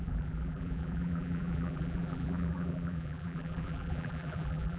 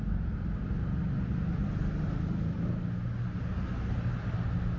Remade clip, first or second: first